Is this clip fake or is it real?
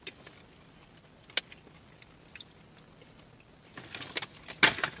real